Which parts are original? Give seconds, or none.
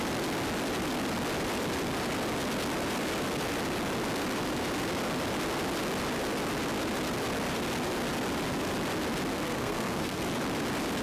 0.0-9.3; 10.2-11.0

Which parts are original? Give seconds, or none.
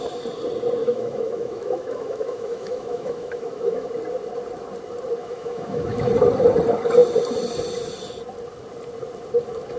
0.0-0.8; 3.9-5.2; 6.1-9.8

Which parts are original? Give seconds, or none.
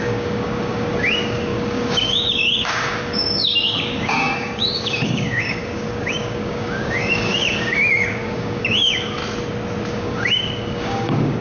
9.2-9.9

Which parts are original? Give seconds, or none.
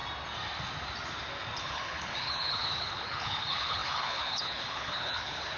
0.0-1.6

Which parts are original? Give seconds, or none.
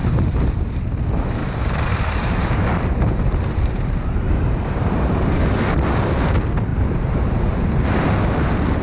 0.0-1.4; 5.7-6.7; 8.0-8.8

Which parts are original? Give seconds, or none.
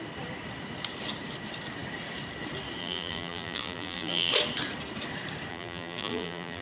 0.0-2.8; 4.3-5.5